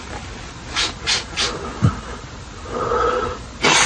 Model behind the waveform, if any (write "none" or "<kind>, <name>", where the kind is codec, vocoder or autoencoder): none